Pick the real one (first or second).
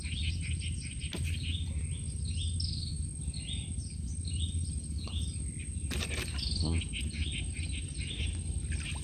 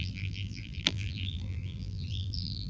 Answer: first